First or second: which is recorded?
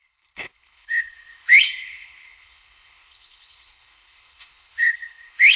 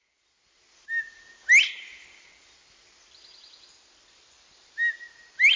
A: second